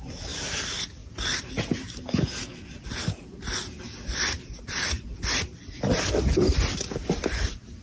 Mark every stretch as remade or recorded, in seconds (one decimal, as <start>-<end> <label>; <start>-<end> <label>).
0.0-7.8 recorded